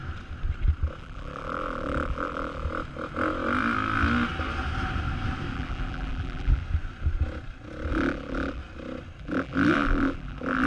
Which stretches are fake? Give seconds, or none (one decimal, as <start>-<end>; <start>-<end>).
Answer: 1.0-2.6; 5.5-6.6; 7.9-8.6; 9.2-10.7